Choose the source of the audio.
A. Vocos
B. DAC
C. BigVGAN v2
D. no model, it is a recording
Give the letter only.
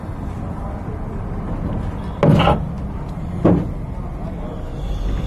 D